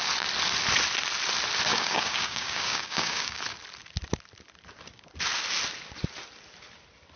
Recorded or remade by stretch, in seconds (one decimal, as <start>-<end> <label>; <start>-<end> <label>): 0.0-1.7 recorded; 1.7-3.4 remade; 3.4-7.2 recorded